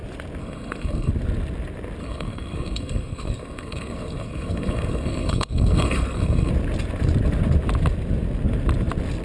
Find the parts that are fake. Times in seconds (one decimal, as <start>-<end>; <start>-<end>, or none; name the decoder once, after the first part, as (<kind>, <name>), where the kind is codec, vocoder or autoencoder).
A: 0.4-1.1 (codec, SNAC); 2.0-6.5